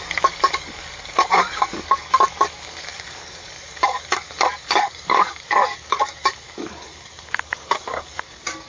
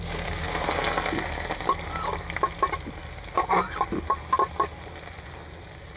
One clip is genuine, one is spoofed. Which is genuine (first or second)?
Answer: second